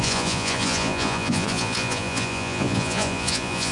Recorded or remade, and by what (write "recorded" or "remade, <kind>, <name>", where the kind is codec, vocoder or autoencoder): remade, vocoder, Vocos